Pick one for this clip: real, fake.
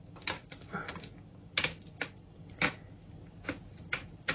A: real